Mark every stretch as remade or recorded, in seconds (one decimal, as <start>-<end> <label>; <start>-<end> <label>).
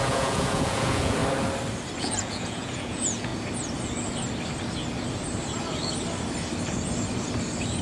0.0-1.2 remade; 1.2-2.0 recorded; 2.0-3.3 remade; 3.3-7.8 recorded